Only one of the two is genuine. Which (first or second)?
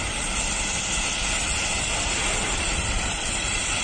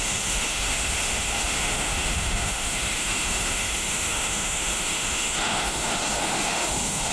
first